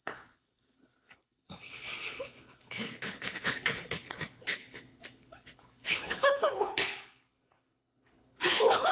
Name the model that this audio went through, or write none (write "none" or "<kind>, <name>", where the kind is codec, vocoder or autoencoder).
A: codec, HILCodec